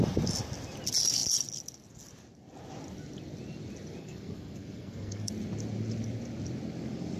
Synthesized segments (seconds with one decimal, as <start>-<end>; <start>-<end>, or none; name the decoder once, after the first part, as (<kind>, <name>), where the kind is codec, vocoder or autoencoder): 4.0-5.3 (codec, SNAC)